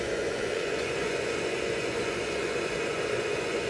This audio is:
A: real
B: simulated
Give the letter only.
B